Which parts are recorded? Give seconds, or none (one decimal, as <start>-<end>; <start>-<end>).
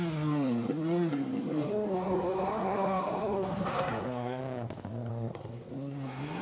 4.4-5.1